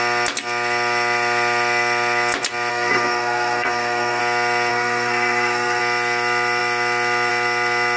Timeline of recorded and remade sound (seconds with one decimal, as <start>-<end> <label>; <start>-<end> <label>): 0.0-2.7 recorded; 2.7-4.2 remade; 4.2-4.7 recorded; 4.7-5.8 remade; 5.8-8.0 recorded